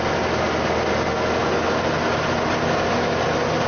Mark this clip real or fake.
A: real